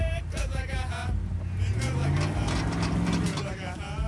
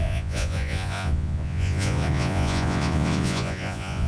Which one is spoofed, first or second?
second